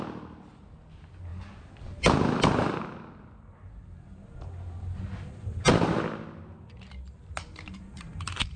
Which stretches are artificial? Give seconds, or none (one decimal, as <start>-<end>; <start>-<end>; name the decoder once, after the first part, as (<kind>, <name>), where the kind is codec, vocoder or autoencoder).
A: none